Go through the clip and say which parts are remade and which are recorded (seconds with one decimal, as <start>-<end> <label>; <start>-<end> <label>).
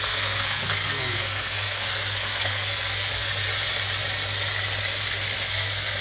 0.0-3.3 remade; 3.3-5.5 recorded; 5.5-6.0 remade